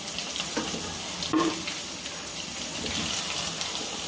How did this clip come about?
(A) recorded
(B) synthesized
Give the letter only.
A